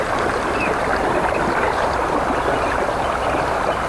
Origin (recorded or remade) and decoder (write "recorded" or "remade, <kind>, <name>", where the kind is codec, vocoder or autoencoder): remade, vocoder, BigVGAN v2